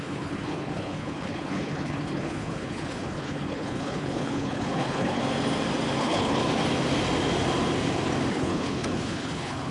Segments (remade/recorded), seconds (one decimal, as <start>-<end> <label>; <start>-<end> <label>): 0.0-5.2 remade; 5.2-6.0 recorded; 6.0-6.4 remade; 6.4-8.3 recorded; 8.3-9.7 remade